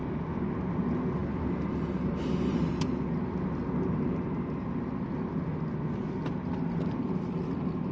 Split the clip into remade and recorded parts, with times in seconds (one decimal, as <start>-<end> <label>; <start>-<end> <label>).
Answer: 0.0-7.9 recorded